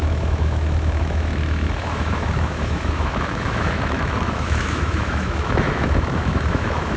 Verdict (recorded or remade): remade